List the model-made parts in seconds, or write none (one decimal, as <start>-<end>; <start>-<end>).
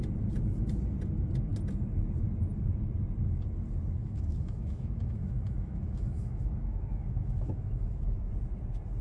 4.0-8.3